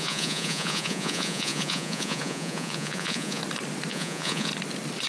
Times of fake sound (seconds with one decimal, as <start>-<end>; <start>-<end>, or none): 0.0-3.4; 3.9-4.5